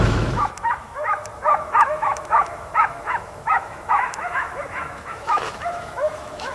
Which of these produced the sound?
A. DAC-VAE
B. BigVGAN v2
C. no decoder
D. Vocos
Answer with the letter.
A